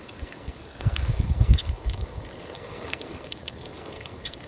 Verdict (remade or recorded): remade